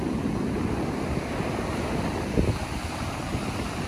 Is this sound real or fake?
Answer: real